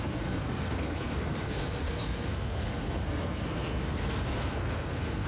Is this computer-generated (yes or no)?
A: yes